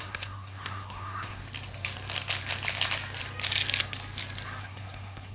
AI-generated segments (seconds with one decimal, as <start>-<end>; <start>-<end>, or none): 0.0-1.4; 4.6-5.3